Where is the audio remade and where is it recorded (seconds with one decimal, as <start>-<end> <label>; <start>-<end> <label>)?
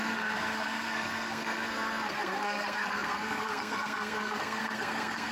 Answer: 0.0-5.3 remade